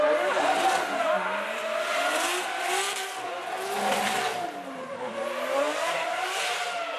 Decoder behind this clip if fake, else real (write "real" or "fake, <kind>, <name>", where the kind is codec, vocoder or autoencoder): real